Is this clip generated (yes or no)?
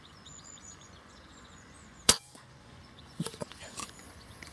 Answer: yes